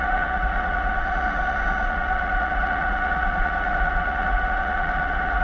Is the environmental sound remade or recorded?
remade